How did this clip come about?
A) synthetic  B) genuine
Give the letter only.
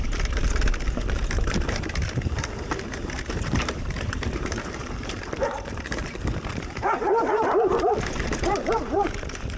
A